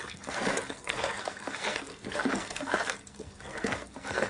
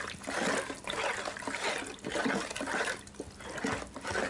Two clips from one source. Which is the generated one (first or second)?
first